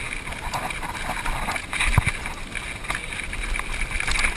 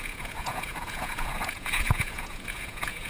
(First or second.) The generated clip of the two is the second